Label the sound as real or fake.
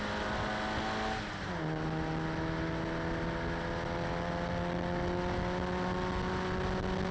real